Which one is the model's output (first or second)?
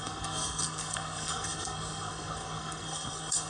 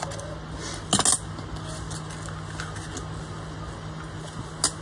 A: first